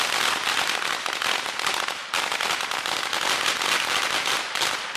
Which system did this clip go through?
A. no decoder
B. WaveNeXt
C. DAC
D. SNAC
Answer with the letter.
A